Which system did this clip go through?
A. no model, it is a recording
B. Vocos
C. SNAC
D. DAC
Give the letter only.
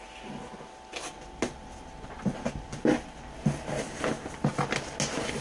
A